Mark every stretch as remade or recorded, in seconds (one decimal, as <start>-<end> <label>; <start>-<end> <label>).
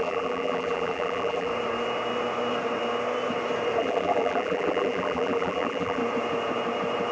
0.0-1.5 remade; 1.5-3.8 recorded; 3.8-6.0 remade; 6.0-7.1 recorded